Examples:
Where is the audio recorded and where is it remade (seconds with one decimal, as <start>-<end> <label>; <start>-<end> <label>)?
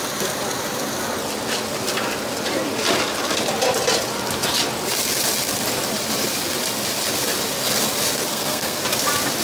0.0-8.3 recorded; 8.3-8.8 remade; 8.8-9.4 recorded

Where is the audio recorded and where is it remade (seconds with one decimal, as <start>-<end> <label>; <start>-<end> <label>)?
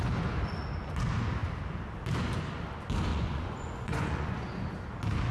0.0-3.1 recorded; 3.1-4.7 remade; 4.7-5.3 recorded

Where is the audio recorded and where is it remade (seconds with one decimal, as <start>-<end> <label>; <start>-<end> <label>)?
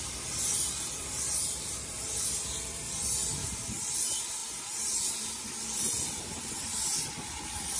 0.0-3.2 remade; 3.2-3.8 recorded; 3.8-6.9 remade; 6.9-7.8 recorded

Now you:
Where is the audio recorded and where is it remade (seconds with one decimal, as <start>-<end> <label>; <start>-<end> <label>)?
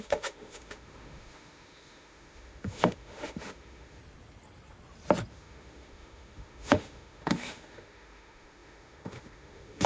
0.0-4.0 remade; 4.0-5.3 recorded; 5.3-9.9 remade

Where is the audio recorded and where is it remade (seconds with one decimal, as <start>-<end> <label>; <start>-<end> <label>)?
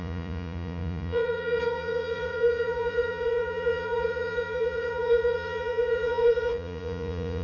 0.0-7.4 remade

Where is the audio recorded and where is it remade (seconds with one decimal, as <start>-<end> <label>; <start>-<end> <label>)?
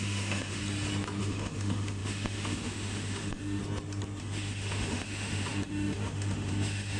0.0-0.6 remade; 0.6-1.2 recorded; 1.2-3.6 remade; 3.6-4.2 recorded; 4.2-7.0 remade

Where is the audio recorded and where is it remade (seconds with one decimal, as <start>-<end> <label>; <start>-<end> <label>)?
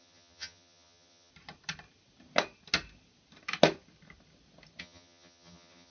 0.0-1.3 remade; 1.3-4.8 recorded; 4.8-5.9 remade